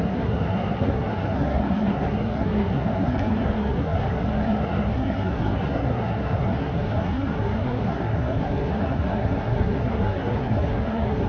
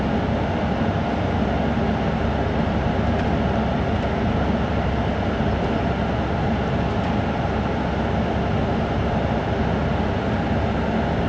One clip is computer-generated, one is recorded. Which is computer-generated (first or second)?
first